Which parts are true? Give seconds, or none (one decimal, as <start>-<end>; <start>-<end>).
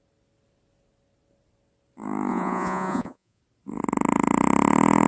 0.0-2.3; 3.4-5.1